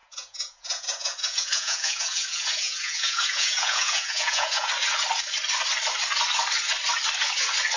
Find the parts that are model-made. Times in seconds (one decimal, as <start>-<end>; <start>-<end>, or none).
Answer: 0.0-4.7